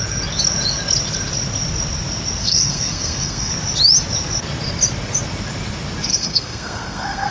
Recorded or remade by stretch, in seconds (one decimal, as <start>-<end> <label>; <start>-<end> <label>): 0.0-2.4 recorded; 2.4-3.5 remade; 3.5-6.1 recorded; 6.1-7.3 remade